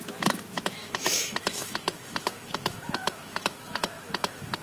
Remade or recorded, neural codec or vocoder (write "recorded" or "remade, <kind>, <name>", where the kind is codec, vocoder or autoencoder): remade, autoencoder, DAC-VAE